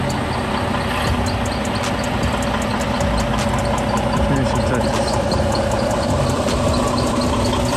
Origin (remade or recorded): recorded